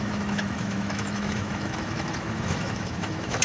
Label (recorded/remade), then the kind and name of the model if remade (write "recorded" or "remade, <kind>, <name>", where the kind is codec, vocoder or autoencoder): remade, autoencoder, DAC-VAE